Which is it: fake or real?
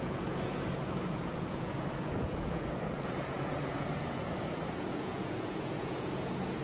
fake